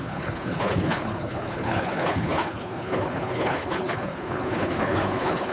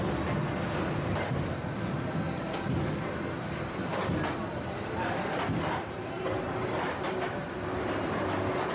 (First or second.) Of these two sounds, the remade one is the first